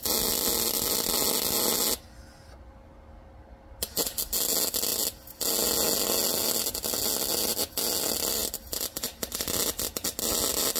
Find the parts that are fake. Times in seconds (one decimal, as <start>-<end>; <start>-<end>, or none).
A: none